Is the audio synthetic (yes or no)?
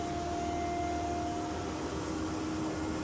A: no